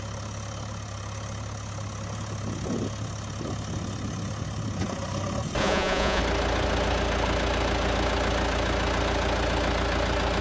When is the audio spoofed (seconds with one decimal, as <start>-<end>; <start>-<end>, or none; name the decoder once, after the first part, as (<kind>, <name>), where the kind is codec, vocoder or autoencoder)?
5.6-6.2 (vocoder, Vocos)